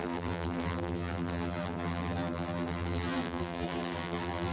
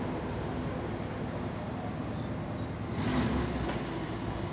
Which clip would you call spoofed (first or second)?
first